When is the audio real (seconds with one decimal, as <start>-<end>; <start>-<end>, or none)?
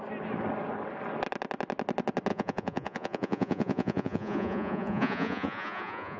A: 0.0-2.3